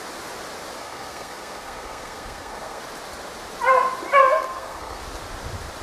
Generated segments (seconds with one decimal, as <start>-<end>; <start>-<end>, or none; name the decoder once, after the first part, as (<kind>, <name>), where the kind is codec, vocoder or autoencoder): 0.8-2.8 (codec, SNAC); 4.2-5.0

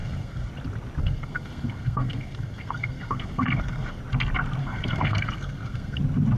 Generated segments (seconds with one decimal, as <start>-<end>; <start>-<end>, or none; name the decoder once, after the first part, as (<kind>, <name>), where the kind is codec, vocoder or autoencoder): 0.0-0.5 (codec, SNAC); 1.0-4.0; 4.6-6.0

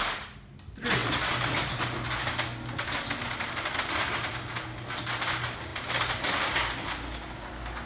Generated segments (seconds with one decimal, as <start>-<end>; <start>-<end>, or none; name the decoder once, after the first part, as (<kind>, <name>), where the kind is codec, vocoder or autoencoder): none

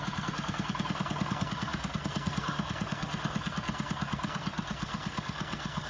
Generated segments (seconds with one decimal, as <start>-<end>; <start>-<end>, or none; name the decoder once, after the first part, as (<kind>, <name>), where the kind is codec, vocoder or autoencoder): 0.0-5.9 (codec, SNAC)

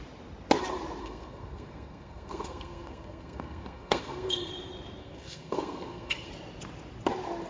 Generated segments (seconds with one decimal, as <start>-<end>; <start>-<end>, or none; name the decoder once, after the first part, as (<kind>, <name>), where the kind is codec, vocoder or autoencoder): 1.0-4.5 (codec, SNAC); 5.0-6.3

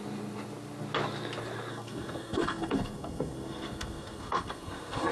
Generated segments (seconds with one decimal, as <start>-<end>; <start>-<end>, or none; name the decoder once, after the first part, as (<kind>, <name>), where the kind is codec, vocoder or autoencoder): 1.7-5.1 (codec, SNAC)

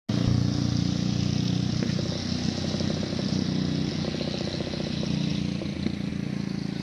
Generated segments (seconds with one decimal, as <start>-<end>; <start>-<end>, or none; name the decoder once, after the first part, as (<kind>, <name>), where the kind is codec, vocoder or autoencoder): none